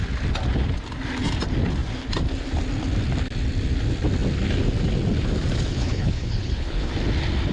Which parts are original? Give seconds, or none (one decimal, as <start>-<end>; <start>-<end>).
0.0-5.7; 6.9-7.5